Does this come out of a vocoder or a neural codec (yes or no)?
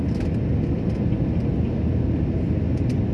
no